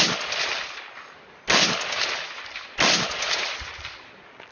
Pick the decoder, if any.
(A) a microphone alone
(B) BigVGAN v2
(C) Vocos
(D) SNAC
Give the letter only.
A